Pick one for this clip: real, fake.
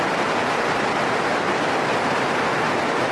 real